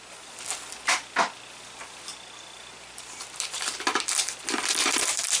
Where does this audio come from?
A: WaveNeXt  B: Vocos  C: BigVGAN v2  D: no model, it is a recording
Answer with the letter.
D